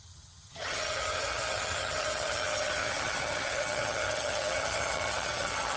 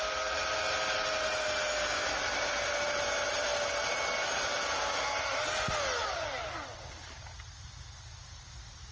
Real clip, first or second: second